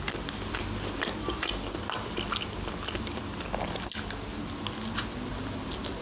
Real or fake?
real